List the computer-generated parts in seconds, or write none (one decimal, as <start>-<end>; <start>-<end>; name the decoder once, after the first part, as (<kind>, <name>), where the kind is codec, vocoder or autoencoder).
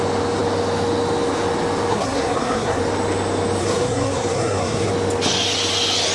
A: 1.9-2.8 (codec, SNAC); 3.6-4.9